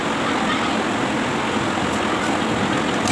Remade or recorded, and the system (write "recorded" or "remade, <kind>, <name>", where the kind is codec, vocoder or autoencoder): recorded